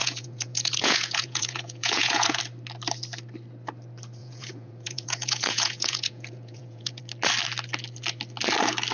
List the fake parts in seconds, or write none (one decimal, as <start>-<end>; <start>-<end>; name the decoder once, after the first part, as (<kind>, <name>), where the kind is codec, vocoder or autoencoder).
0.0-2.4 (vocoder, Vocos); 4.2-7.0